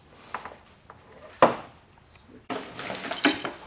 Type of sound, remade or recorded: recorded